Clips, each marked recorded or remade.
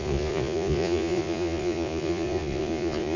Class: remade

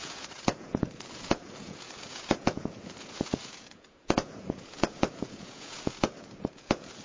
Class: remade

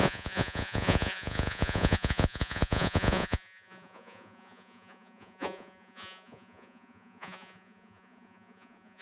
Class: remade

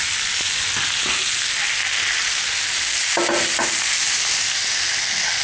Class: recorded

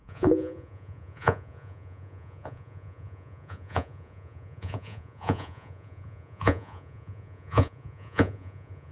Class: remade